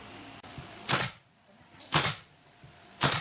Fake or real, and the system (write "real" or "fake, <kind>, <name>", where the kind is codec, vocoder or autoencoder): real